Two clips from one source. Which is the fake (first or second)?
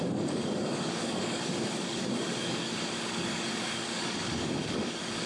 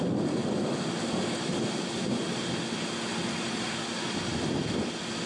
first